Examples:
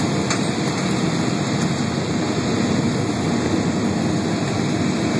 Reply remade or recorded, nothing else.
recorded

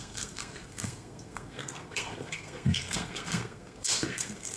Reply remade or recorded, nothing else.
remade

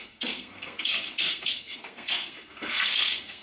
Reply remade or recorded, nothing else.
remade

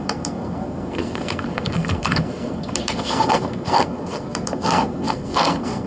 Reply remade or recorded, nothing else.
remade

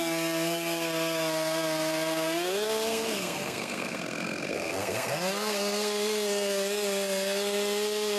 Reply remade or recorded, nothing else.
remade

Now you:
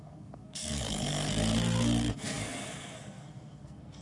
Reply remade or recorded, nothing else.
remade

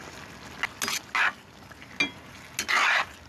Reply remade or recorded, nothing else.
recorded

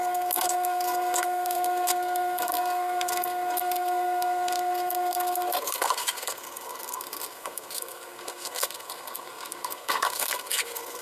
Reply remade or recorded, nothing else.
remade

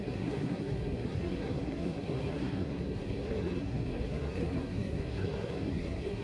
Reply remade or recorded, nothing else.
remade